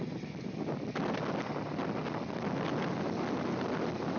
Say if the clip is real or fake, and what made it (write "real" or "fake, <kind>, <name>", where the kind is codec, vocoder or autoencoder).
real